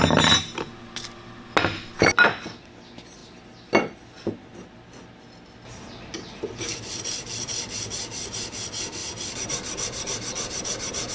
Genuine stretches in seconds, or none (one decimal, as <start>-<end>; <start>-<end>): 0.0-9.0